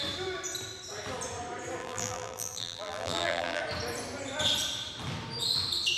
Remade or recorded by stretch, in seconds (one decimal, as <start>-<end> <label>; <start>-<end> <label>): 0.0-1.8 recorded; 1.8-3.6 remade; 3.6-6.0 recorded